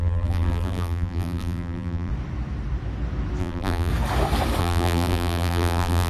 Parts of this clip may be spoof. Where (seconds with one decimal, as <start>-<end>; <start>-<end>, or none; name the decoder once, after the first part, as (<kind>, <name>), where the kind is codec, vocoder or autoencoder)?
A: 0.0-2.1 (vocoder, BigVGAN v2); 3.4-3.9; 4.6-6.1